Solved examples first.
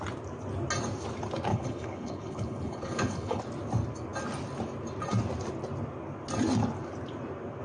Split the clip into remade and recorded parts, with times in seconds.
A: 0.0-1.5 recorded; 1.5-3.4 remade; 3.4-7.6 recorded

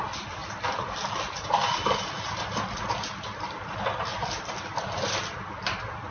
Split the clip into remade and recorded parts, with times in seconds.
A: 0.0-6.1 recorded

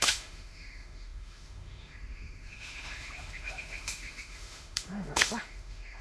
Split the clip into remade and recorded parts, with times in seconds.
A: 0.0-6.0 remade

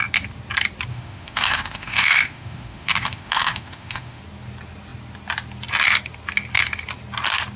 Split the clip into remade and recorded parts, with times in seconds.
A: 0.0-0.9 recorded; 0.9-4.2 remade; 4.2-7.6 recorded

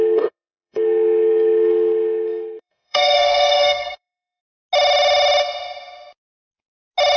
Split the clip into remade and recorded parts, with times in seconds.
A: 0.0-4.4 remade; 4.4-7.2 recorded

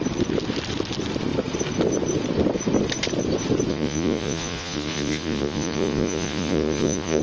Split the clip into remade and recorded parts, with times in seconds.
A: 0.0-3.7 recorded; 3.7-7.2 remade